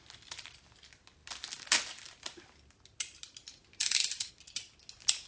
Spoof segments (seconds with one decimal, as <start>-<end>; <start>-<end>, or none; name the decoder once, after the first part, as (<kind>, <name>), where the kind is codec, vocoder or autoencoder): none